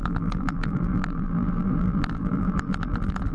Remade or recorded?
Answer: remade